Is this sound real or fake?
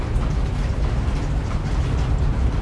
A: real